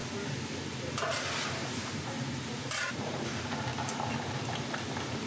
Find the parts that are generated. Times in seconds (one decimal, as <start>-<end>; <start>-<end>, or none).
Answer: 0.9-3.7; 4.3-5.3